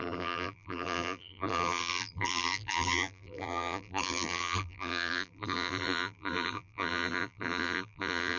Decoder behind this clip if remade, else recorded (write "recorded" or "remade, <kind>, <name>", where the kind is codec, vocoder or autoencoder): remade, vocoder, BigVGAN v2